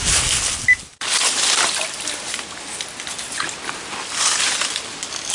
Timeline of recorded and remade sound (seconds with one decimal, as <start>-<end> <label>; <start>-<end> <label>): 0.0-5.3 recorded